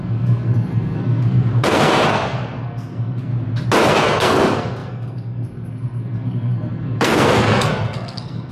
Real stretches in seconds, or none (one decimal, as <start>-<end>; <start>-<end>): 3.3-3.9